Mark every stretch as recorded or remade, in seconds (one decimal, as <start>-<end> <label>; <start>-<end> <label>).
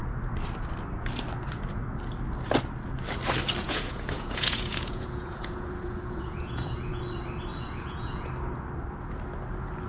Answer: 0.0-3.6 recorded; 3.6-7.0 remade; 7.0-7.5 recorded; 7.5-8.3 remade; 8.3-9.9 recorded